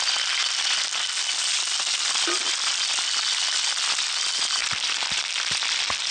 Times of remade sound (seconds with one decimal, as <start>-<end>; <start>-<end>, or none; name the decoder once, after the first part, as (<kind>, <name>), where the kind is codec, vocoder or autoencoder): none